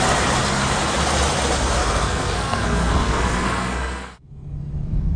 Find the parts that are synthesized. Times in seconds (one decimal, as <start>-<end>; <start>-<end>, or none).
1.8-5.2